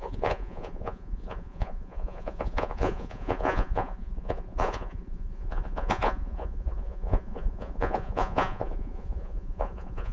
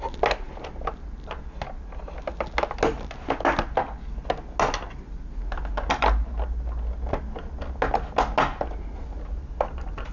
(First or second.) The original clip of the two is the second